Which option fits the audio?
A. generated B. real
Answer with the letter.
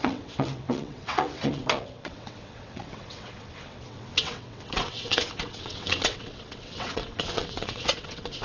A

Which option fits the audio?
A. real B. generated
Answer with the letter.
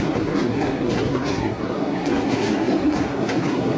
B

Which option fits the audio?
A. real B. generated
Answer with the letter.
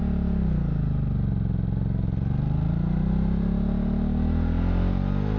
A